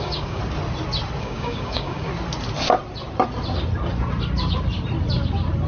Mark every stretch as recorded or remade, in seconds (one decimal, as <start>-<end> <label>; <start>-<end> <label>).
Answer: 0.0-0.4 remade; 0.4-1.2 recorded; 1.2-2.1 remade; 2.1-5.7 recorded